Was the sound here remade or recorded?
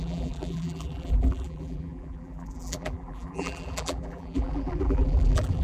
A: remade